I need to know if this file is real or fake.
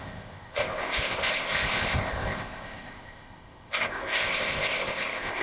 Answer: fake